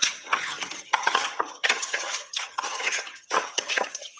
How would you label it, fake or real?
fake